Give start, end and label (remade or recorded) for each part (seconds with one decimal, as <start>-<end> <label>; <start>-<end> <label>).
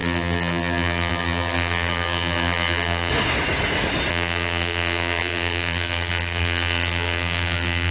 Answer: 0.0-3.1 remade; 3.1-4.1 recorded; 4.1-7.9 remade